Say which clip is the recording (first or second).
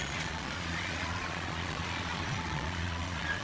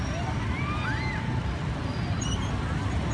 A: second